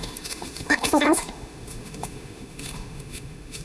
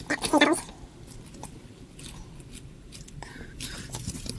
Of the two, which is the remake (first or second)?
first